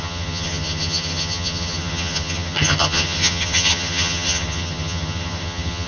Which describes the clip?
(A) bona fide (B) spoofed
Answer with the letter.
B